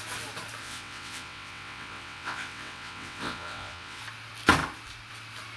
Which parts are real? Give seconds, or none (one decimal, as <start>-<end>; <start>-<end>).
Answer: 0.0-0.6; 4.0-5.6